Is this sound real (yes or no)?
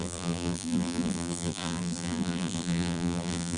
no